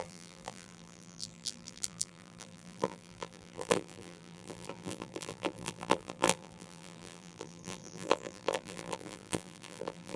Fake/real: fake